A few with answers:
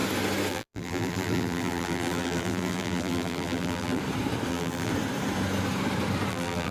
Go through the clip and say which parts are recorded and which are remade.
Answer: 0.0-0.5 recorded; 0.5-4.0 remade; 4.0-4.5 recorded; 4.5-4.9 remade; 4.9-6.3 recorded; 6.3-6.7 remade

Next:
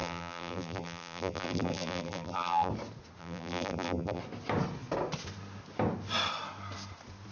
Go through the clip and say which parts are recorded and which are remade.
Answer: 0.0-2.7 remade; 2.7-3.2 recorded; 3.2-4.2 remade; 4.2-7.3 recorded

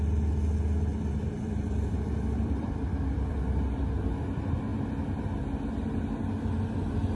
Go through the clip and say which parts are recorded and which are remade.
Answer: 0.0-0.9 recorded; 0.9-3.6 remade; 3.6-7.2 recorded

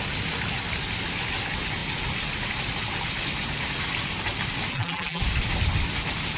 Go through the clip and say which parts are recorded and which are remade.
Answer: 0.0-4.7 recorded; 4.7-5.2 remade; 5.2-6.4 recorded

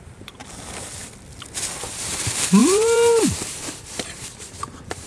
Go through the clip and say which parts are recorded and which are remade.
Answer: 0.0-0.4 remade; 0.4-2.0 recorded; 2.0-5.1 remade

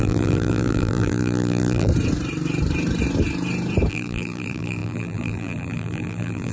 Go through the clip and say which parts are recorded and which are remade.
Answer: 0.0-1.9 remade; 1.9-3.9 recorded; 3.9-6.5 remade

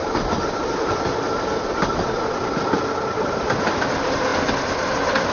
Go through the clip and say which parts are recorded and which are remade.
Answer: 0.0-5.3 recorded